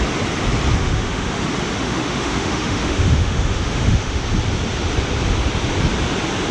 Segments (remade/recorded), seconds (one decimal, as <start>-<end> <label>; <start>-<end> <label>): 0.0-0.8 recorded; 0.8-1.4 remade; 1.4-1.8 recorded; 1.8-4.2 remade; 4.2-6.5 recorded